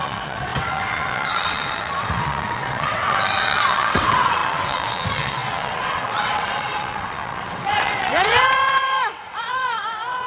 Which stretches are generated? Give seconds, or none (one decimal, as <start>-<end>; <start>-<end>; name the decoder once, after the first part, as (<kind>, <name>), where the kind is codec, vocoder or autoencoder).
0.0-10.3 (vocoder, WaveNeXt)